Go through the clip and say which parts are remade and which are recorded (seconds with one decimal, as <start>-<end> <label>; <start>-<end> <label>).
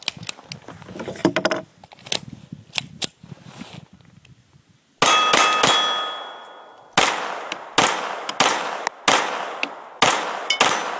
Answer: 0.0-11.0 recorded